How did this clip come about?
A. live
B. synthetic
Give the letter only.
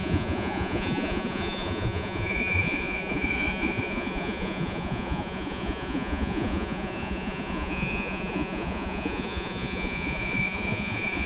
B